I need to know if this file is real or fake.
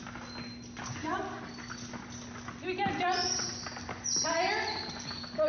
real